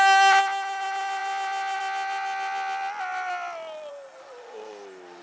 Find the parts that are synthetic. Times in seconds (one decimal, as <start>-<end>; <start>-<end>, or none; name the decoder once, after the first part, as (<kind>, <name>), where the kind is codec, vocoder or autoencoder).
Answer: none